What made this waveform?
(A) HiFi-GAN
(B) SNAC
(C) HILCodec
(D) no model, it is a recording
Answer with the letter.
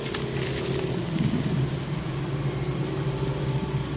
D